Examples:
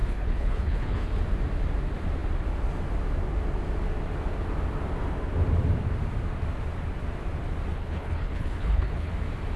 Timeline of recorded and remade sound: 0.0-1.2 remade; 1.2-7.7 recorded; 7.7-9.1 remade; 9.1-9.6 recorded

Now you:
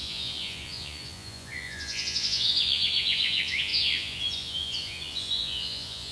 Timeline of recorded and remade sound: 0.0-6.1 remade

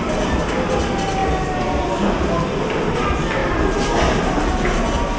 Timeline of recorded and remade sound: 0.0-5.2 recorded

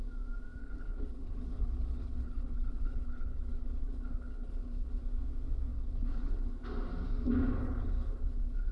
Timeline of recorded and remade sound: 0.0-0.6 recorded; 0.6-5.0 remade; 5.0-5.7 recorded; 5.7-6.5 remade; 6.5-7.6 recorded; 7.6-8.7 remade

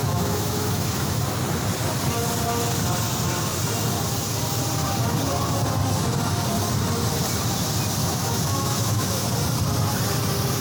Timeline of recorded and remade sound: 0.0-1.2 remade; 1.2-8.0 recorded; 8.0-9.3 remade; 9.3-10.6 recorded